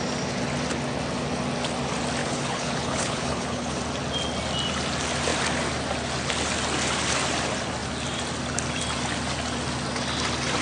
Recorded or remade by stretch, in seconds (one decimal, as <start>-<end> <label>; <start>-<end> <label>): 0.0-2.2 recorded; 2.2-3.8 remade; 3.8-10.6 recorded